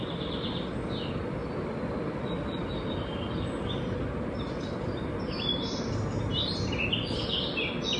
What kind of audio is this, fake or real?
real